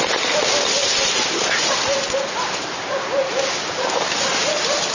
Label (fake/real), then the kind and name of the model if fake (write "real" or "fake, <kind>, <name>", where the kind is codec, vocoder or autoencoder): real